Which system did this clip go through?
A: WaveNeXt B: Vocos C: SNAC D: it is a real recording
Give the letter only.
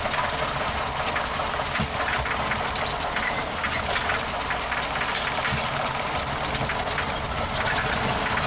D